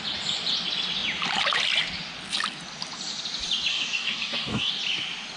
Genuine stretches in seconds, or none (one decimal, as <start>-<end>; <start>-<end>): 0.0-3.7; 4.7-5.4